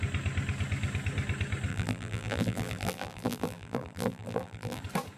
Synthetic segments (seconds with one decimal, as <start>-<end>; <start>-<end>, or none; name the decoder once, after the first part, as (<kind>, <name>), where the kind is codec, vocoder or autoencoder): 1.7-4.8 (vocoder, BigVGAN v2)